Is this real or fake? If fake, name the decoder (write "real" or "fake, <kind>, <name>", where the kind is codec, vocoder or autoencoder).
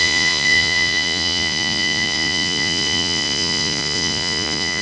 fake, vocoder, Vocos